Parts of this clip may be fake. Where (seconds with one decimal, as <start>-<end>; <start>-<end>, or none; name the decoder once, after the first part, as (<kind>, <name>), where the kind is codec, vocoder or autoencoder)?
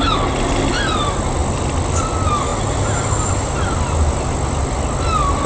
none